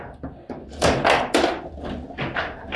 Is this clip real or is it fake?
real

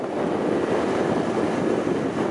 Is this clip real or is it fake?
real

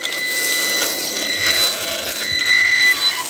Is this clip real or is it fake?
real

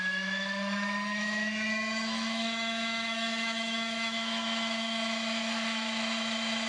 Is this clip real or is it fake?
fake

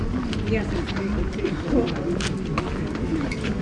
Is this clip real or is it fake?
real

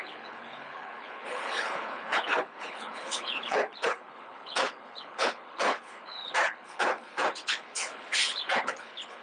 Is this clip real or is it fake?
fake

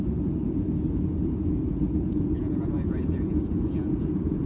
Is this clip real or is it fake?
fake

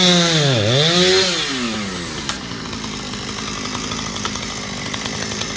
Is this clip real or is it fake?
real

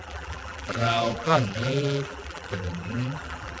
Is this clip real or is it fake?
fake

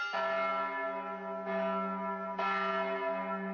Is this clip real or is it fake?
real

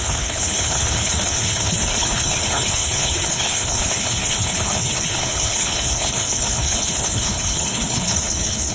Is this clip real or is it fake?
fake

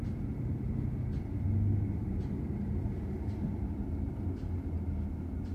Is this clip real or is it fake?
real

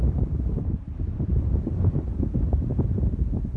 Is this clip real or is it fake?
fake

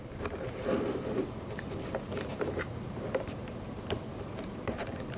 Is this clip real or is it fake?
fake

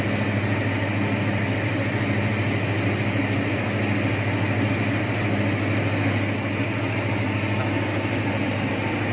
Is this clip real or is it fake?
real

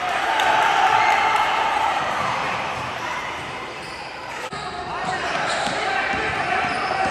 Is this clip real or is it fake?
fake